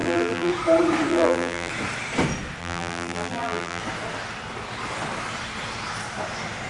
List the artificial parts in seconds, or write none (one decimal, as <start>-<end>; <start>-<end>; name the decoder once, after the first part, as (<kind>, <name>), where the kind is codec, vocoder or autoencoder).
0.0-0.5 (vocoder, BigVGAN v2); 1.1-1.7; 2.6-3.8